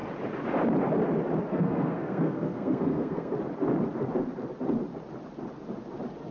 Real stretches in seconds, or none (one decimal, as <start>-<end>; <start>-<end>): 0.0-1.5; 3.3-6.3